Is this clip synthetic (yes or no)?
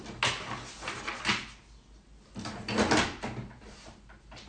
no